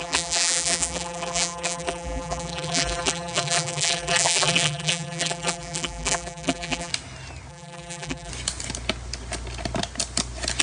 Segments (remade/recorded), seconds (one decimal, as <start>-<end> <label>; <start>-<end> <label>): 0.0-6.9 remade; 6.9-7.5 recorded; 7.5-8.3 remade; 8.3-10.6 recorded